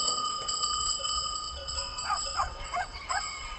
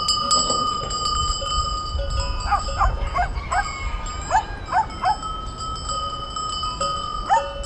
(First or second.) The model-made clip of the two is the first